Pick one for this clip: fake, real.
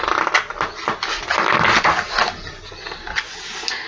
real